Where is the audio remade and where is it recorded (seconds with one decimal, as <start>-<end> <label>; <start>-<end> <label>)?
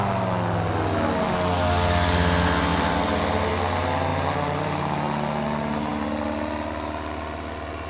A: 0.0-2.7 recorded; 2.7-3.5 remade; 3.5-4.1 recorded; 4.1-4.8 remade; 4.8-7.9 recorded